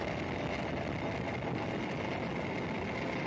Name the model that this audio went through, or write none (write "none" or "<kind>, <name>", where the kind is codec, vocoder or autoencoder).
none